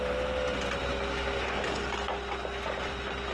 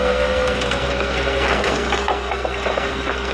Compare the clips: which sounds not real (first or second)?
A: second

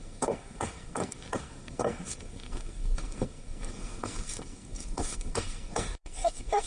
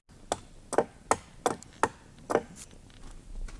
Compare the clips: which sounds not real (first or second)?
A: first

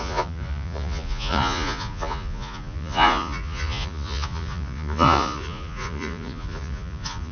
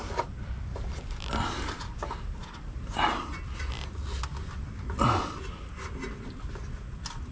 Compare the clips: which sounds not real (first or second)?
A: first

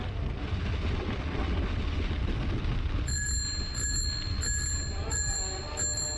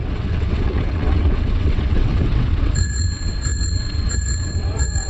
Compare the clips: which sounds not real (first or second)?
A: second